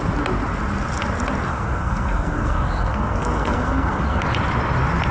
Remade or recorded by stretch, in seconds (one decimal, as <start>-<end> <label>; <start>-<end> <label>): 0.0-1.5 recorded; 1.5-4.2 remade; 4.2-5.1 recorded